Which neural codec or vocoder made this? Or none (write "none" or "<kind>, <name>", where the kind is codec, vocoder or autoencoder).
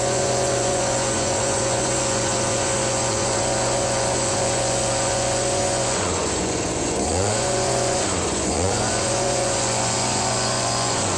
vocoder, Vocos